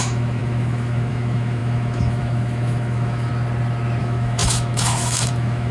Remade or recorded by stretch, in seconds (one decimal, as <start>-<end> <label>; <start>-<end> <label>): 0.0-3.3 remade; 3.3-4.0 recorded; 4.0-5.7 remade